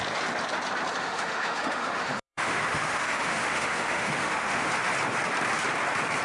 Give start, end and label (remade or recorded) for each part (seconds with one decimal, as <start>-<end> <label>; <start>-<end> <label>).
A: 0.0-1.0 recorded; 1.0-4.7 remade; 4.7-6.2 recorded